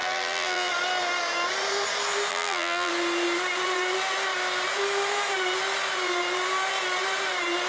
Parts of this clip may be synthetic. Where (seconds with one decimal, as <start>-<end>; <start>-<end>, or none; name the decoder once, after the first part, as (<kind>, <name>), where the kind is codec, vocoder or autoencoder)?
0.0-0.7 (vocoder, BigVGAN v2); 2.3-2.9